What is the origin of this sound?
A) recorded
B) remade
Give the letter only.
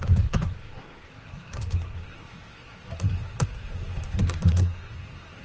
B